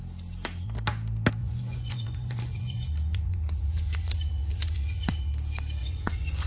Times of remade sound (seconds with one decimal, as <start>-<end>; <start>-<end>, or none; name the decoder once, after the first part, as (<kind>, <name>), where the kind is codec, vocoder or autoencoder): 1.4-5.3 (vocoder, Vocos); 5.8-6.5